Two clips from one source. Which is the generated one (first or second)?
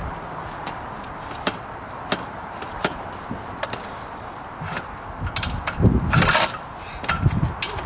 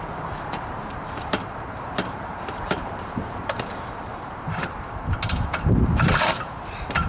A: second